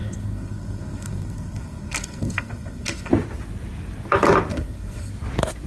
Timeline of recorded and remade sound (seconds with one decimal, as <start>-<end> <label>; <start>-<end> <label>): 0.0-3.1 remade; 3.1-4.5 recorded; 4.5-5.1 remade; 5.1-5.7 recorded